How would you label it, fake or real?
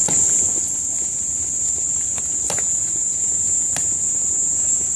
real